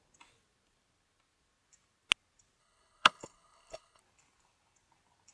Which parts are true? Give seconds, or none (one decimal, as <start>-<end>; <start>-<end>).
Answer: 0.0-2.6; 4.0-5.3